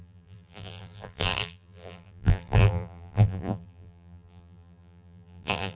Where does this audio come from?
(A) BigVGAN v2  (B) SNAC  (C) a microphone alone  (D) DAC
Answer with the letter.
A